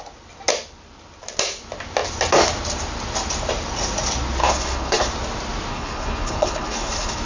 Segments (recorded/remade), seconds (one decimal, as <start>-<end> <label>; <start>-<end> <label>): 0.0-4.4 recorded; 4.4-5.1 remade; 5.1-5.7 recorded; 5.7-7.2 remade